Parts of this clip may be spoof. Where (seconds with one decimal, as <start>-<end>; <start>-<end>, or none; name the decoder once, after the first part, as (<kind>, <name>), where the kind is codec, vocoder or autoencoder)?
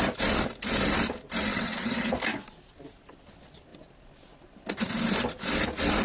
1.5-2.1 (vocoder, WaveNeXt)